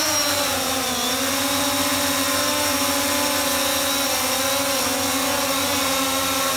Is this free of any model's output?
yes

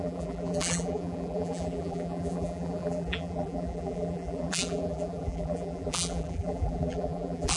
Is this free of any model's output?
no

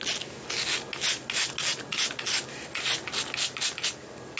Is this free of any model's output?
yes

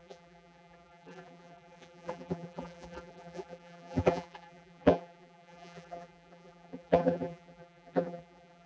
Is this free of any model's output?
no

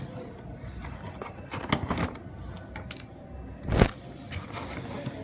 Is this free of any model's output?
yes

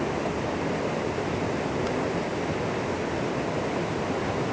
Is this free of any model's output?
yes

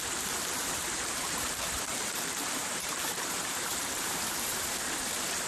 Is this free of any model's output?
no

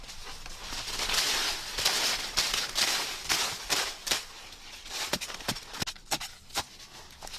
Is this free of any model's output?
yes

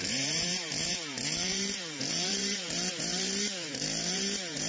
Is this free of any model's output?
no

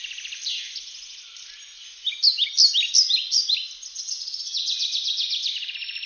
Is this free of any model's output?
yes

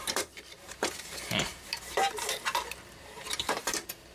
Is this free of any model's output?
no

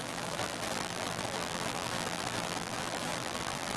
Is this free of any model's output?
no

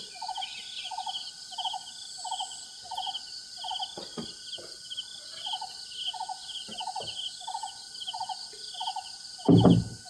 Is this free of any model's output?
yes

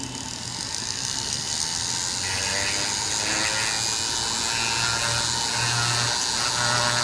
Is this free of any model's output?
yes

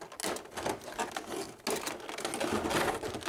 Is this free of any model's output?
yes